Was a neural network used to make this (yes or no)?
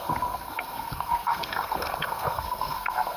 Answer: yes